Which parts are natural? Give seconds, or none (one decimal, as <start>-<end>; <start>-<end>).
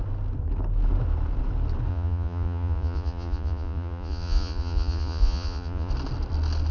0.0-1.9; 5.9-6.7